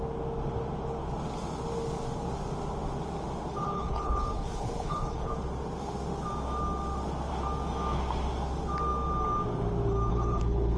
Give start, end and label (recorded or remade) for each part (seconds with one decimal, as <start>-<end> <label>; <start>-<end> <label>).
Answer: 0.0-3.5 recorded; 3.5-5.3 remade; 5.3-10.1 recorded; 10.1-10.8 remade